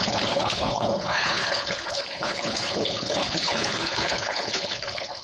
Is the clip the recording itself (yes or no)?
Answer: no